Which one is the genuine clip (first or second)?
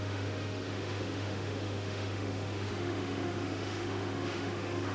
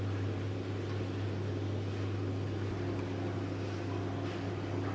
second